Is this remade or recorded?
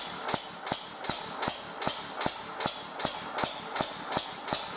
recorded